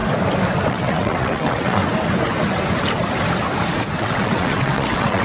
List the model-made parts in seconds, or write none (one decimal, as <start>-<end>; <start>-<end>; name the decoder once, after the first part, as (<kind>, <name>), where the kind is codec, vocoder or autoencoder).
0.7-1.8 (vocoder, WaveNeXt); 4.0-5.2